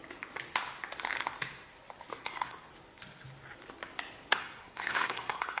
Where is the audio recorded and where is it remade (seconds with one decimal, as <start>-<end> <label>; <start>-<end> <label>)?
0.0-2.2 recorded; 2.2-2.7 remade; 2.7-4.3 recorded; 4.3-5.6 remade